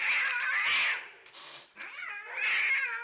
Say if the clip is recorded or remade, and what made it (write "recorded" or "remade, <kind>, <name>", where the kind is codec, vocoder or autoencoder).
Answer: recorded